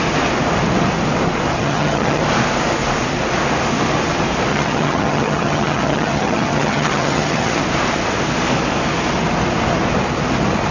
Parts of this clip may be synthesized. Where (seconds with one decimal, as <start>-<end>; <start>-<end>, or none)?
1.6-2.2; 4.5-7.6